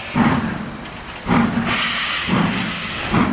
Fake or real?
real